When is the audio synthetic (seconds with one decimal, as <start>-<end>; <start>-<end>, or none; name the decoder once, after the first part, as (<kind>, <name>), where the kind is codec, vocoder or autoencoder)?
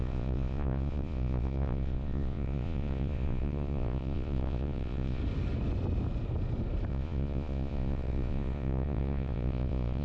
0.0-5.2 (vocoder, Vocos); 6.9-10.0